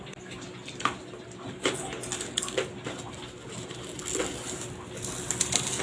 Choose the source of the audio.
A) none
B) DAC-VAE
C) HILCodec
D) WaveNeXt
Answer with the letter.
A